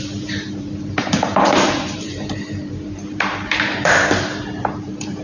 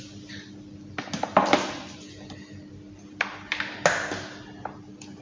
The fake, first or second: first